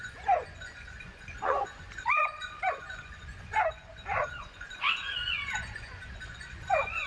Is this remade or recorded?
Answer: remade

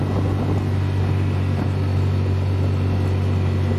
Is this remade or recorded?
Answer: recorded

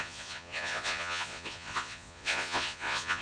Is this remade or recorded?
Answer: remade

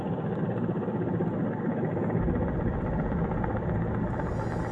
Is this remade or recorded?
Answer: recorded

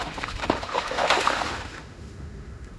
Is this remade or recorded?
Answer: remade